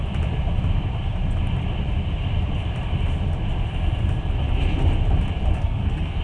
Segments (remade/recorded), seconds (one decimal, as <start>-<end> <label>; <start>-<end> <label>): 0.0-5.5 recorded; 5.5-6.2 remade